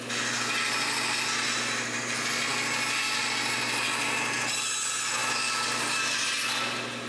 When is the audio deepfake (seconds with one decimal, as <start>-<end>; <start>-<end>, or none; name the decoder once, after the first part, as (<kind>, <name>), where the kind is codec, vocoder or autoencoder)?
none